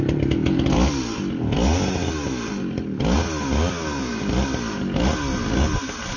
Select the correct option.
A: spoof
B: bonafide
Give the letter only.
B